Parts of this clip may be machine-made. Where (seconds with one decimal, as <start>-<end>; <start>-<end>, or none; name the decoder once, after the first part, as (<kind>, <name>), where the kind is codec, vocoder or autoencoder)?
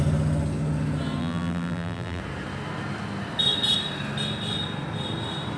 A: 1.2-2.2 (vocoder, BigVGAN v2)